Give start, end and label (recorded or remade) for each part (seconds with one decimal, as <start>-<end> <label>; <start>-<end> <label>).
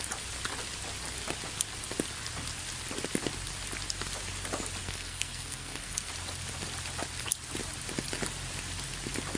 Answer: 0.0-4.8 recorded; 4.8-6.1 remade; 6.1-9.4 recorded